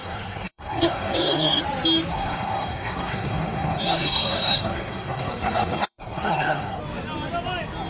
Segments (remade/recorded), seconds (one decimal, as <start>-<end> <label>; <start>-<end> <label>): 0.0-1.6 remade; 1.6-2.1 recorded; 2.1-6.8 remade; 6.8-7.9 recorded